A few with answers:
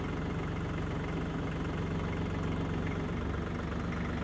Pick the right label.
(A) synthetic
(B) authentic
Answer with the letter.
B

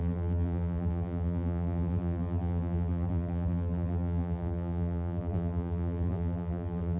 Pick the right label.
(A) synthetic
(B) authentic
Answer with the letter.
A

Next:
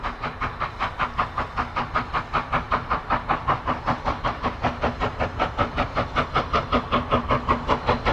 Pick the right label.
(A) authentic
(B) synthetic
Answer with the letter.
A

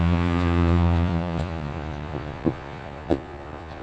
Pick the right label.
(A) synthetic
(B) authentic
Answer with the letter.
A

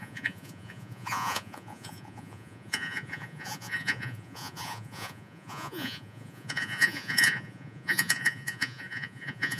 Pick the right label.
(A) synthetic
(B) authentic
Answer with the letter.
A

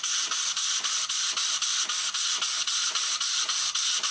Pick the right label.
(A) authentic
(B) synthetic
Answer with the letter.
B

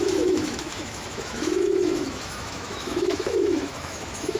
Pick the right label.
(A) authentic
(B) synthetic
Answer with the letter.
B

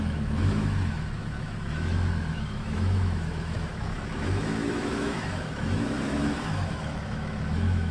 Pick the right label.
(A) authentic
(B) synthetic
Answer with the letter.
B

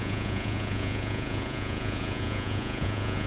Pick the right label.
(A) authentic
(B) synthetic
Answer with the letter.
B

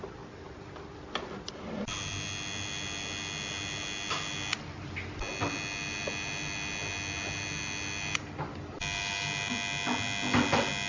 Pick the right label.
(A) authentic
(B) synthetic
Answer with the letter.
A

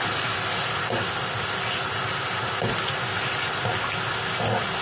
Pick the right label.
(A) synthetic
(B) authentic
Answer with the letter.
B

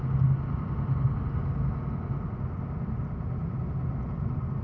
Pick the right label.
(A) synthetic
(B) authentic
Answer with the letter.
B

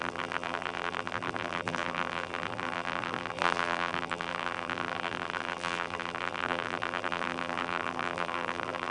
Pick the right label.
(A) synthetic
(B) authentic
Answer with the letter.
A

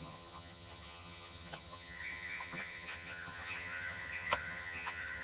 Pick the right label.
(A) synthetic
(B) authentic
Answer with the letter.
A